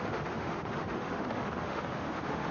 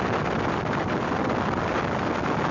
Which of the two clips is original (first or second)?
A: second